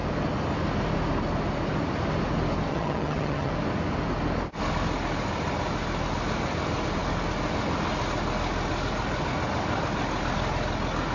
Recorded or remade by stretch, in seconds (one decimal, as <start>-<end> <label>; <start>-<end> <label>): 0.0-2.7 recorded; 2.7-3.5 remade; 3.5-11.1 recorded